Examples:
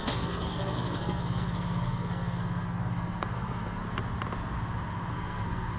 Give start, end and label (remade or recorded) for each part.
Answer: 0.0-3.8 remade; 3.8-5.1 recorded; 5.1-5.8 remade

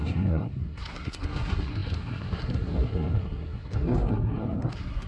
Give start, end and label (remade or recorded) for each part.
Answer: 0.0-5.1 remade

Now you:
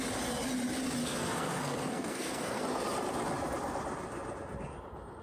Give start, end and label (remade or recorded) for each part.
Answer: 0.0-1.0 recorded; 1.0-2.6 remade; 2.6-5.2 recorded